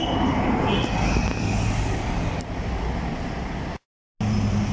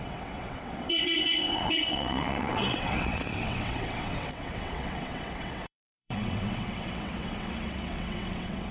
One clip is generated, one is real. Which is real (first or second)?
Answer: first